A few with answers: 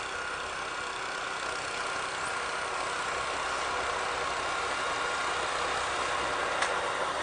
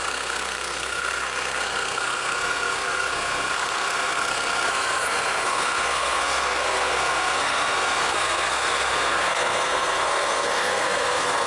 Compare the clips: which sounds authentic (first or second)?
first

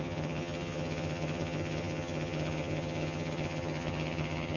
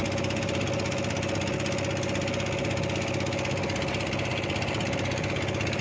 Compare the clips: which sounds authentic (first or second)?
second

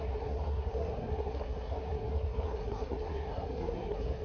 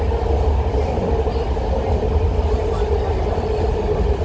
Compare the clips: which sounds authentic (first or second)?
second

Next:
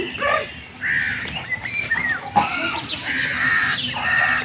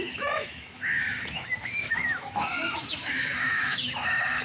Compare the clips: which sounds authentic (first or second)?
first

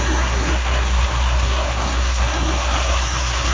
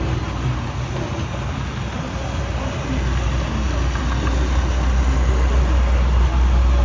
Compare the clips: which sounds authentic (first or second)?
second